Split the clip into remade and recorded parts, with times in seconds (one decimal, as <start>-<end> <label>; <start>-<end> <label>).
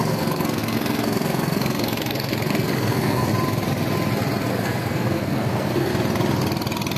0.0-3.3 remade; 3.3-4.5 recorded; 4.5-5.9 remade; 5.9-7.0 recorded